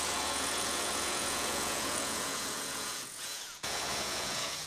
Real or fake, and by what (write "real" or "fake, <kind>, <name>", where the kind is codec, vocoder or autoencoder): fake, vocoder, Vocos